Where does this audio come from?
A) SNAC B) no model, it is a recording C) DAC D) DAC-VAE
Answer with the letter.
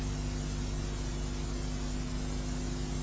B